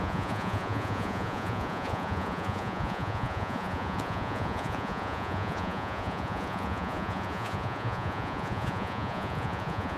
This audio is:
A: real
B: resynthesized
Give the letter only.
B